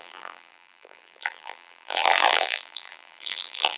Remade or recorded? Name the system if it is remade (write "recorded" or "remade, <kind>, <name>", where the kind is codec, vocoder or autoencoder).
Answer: remade, vocoder, BigVGAN v2